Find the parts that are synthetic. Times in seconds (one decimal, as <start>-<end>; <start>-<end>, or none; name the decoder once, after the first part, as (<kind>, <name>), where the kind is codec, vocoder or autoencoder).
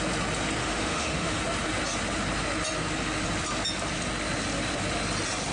0.6-1.4 (autoencoder, DAC-VAE)